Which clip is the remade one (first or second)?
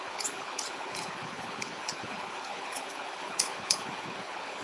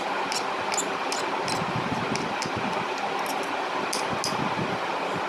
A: first